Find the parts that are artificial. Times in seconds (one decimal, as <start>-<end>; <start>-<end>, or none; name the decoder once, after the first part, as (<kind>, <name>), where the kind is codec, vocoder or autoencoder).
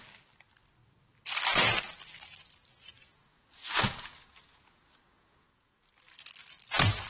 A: 3.0-5.9 (vocoder, Vocos)